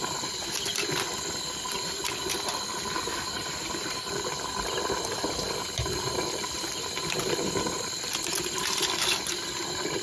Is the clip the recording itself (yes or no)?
yes